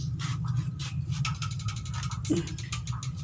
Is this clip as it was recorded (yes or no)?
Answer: yes